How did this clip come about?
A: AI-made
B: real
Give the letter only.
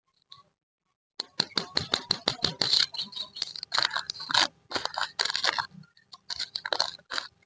B